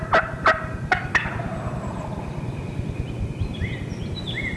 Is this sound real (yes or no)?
yes